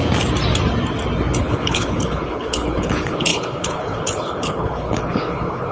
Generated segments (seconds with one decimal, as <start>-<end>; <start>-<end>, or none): 1.4-5.7